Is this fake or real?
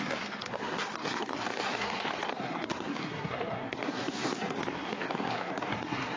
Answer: fake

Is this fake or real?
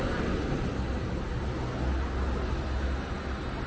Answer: real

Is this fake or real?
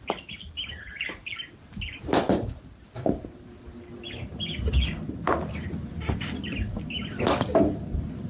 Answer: real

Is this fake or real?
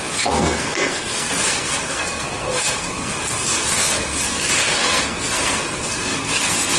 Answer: fake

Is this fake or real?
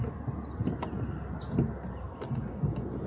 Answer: real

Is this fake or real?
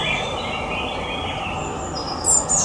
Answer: real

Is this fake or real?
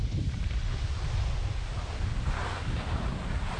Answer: fake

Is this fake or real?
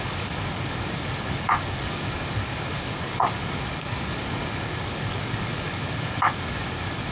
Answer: fake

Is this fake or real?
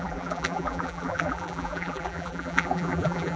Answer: fake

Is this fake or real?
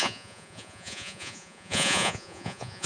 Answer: fake